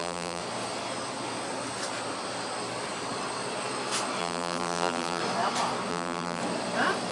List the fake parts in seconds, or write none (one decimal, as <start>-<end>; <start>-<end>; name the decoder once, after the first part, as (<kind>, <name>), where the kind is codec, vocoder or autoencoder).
0.0-0.4 (vocoder, BigVGAN v2); 4.2-5.2; 5.9-6.4